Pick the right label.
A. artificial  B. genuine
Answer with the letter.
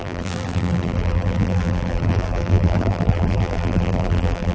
A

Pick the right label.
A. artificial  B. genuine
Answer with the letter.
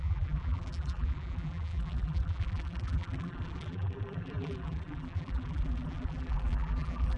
A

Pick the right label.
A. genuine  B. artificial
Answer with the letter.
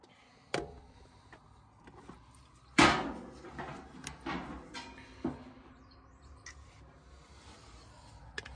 A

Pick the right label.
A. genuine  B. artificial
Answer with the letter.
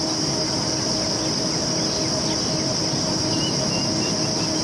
A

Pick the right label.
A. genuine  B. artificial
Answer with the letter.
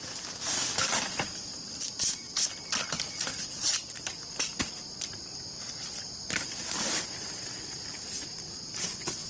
B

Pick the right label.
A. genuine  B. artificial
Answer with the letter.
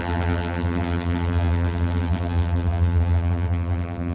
B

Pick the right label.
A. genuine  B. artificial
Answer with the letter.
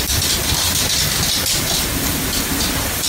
A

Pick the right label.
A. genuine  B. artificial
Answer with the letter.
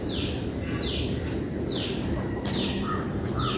B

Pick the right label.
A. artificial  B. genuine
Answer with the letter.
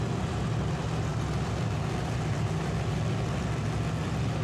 B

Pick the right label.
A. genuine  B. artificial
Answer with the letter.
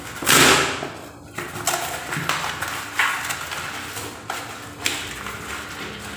A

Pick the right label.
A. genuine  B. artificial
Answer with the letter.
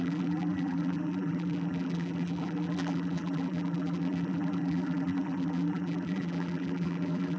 B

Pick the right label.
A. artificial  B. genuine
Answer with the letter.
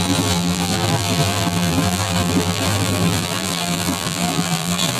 A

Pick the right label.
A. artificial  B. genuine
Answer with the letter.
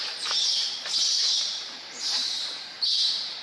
A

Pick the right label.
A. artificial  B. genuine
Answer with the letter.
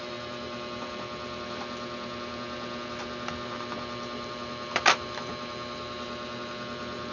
A